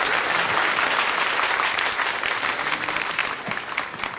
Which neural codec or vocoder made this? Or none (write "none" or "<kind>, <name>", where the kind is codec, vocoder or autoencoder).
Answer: none